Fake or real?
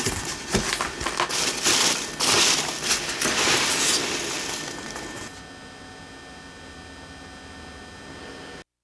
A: real